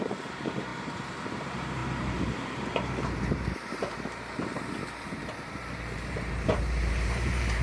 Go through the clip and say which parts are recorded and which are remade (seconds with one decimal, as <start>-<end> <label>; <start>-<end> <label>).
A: 0.0-7.6 remade

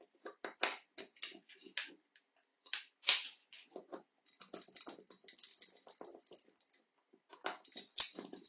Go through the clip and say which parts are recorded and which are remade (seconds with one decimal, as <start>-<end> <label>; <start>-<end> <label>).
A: 0.0-2.5 recorded; 2.5-4.1 remade; 4.1-8.5 recorded